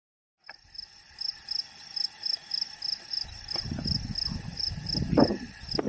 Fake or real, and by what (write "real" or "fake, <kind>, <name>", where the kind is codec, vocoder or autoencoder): real